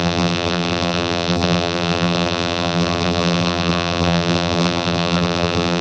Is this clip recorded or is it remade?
remade